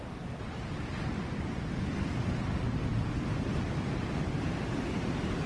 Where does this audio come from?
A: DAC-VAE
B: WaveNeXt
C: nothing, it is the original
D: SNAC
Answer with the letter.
C